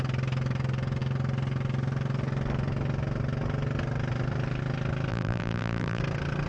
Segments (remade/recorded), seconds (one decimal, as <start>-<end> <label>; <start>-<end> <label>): 0.0-5.1 recorded; 5.1-6.0 remade; 6.0-6.5 recorded